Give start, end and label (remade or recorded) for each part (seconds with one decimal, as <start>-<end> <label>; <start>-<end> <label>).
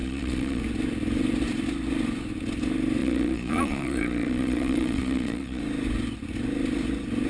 0.0-0.6 remade; 0.6-3.0 recorded; 3.0-5.6 remade; 5.6-7.3 recorded